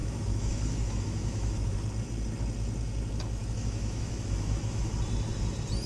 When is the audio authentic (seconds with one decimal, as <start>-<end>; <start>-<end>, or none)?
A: 1.8-3.4; 4.9-5.9